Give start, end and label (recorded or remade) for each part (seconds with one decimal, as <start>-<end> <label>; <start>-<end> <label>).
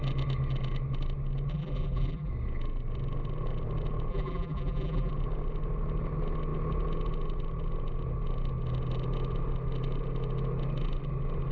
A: 0.0-1.5 recorded; 1.5-2.3 remade; 2.3-4.1 recorded; 4.1-5.1 remade; 5.1-11.5 recorded